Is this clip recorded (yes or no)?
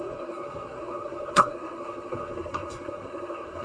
no